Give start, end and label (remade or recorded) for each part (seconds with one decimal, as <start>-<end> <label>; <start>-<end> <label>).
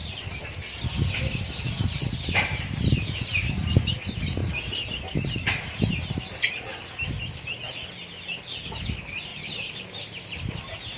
0.0-0.8 remade; 0.8-4.4 recorded; 4.4-5.0 remade; 5.0-11.0 recorded